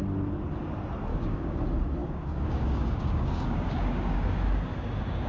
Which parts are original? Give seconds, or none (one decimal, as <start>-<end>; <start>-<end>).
0.0-1.1; 1.6-2.0